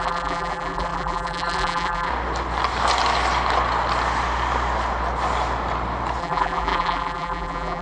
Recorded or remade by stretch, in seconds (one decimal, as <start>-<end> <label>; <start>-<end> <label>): 0.0-2.1 remade; 2.1-6.2 recorded; 6.2-7.8 remade